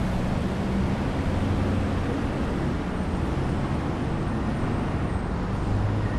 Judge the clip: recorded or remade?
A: recorded